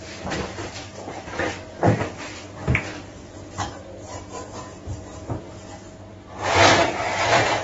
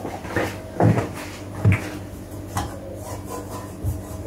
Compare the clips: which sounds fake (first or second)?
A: first